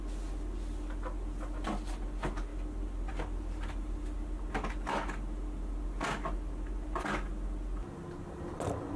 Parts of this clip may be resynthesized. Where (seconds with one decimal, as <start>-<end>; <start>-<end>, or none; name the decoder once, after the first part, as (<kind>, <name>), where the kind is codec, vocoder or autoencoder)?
none